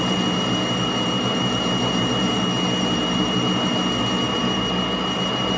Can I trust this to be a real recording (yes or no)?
yes